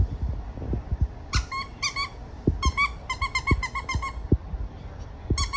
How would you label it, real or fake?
real